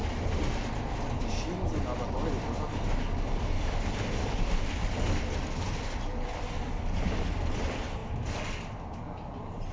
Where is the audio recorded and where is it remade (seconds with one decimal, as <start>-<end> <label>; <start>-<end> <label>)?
0.0-9.7 recorded